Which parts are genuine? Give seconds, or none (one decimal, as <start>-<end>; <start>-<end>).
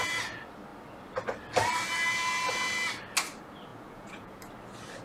0.0-3.7; 4.4-5.0